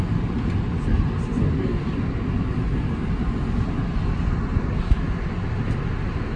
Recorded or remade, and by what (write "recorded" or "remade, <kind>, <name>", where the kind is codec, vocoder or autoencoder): recorded